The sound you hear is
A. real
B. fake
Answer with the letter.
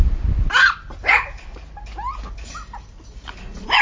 A